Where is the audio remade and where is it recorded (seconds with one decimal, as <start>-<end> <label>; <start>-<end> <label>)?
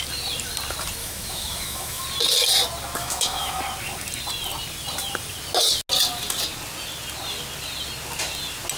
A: 0.0-1.0 recorded; 1.0-2.0 remade; 2.0-3.0 recorded; 3.0-3.6 remade; 3.6-8.8 recorded